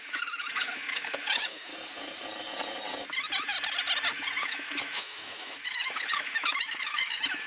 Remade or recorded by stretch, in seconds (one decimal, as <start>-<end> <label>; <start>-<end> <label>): 0.0-1.7 remade; 1.7-4.4 recorded; 4.4-7.5 remade

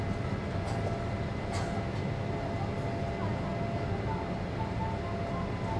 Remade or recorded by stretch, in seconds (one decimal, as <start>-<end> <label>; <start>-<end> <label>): 0.0-5.8 recorded

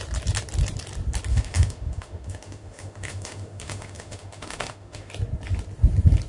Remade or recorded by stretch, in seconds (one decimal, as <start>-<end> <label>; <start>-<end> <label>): 0.0-1.3 recorded; 1.3-5.1 remade; 5.1-6.3 recorded

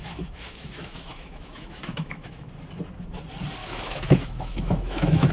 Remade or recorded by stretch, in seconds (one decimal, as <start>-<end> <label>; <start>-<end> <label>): 0.0-2.5 remade; 2.5-3.6 recorded; 3.6-5.3 remade

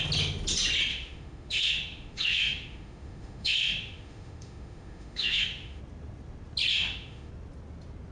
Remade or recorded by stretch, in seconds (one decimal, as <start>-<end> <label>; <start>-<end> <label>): 0.0-0.9 recorded; 0.9-5.8 remade; 5.8-6.7 recorded; 6.7-7.3 remade; 7.3-8.1 recorded

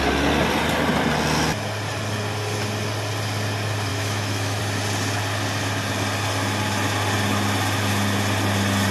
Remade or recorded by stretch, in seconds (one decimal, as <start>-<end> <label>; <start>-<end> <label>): 0.0-3.9 recorded; 3.9-4.6 remade; 4.6-8.9 recorded

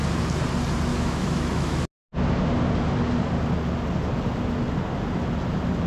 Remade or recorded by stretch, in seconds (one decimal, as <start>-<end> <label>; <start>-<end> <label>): 0.0-0.9 recorded; 0.9-1.8 remade; 1.8-5.9 recorded

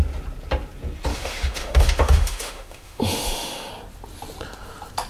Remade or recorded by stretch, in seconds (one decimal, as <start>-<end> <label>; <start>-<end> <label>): 0.0-1.1 recorded; 1.1-3.7 remade; 3.7-5.1 recorded